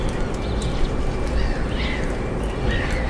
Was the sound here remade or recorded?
recorded